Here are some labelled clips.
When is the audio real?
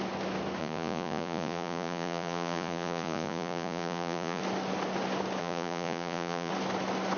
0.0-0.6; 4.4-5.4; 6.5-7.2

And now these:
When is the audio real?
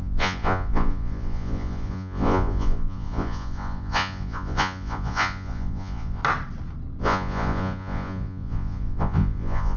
6.2-7.0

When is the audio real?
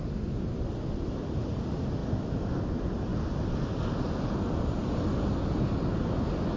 0.0-6.6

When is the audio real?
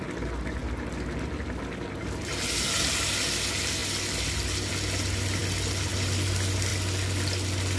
0.0-7.8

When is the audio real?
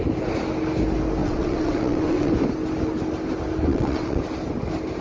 0.0-1.2; 2.3-3.7; 4.2-5.0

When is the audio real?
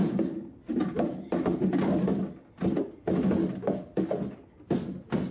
0.0-5.3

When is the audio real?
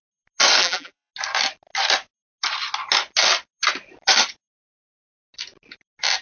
0.0-0.6; 1.1-6.2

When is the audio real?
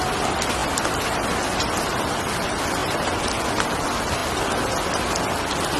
4.2-5.2